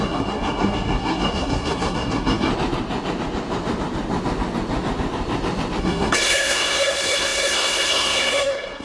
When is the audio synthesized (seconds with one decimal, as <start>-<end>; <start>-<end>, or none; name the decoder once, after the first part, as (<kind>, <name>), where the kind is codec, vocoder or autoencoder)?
0.0-2.5 (codec, SNAC); 5.8-8.8